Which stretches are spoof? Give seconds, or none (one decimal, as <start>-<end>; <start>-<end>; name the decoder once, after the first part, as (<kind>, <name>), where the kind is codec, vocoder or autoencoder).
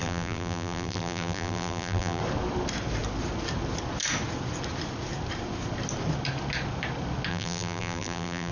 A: 0.0-2.2 (vocoder, BigVGAN v2); 7.3-8.5